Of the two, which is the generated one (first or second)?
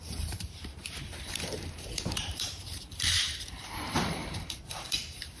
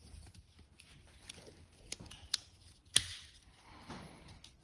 first